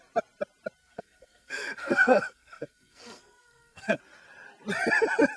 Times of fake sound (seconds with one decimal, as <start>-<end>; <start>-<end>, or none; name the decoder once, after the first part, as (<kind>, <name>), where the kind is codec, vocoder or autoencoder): 0.8-4.0 (codec, SNAC)